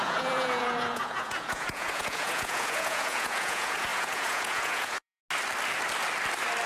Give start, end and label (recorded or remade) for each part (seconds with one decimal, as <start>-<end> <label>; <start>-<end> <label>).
0.0-5.2 remade; 5.2-6.7 recorded